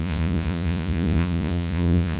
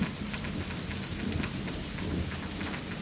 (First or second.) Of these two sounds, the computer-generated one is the first